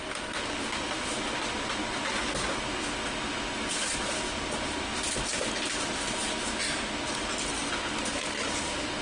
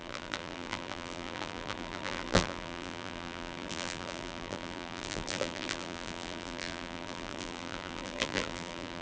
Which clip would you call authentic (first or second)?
first